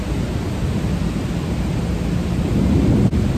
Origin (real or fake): real